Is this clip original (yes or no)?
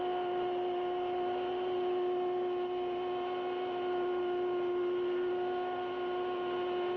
yes